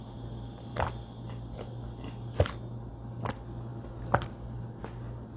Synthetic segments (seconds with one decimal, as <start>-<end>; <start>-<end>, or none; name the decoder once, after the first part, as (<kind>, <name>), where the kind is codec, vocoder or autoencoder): none